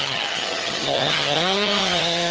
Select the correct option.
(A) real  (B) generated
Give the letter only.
B